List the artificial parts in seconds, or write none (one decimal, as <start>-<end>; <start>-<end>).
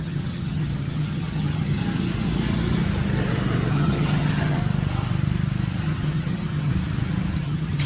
0.0-1.8; 3.7-4.6; 5.8-6.7; 7.4-7.9